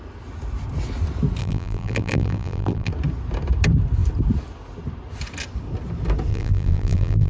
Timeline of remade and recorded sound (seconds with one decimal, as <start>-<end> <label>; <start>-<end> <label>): 0.0-1.4 recorded; 1.4-2.9 remade; 2.9-6.3 recorded; 6.3-7.3 remade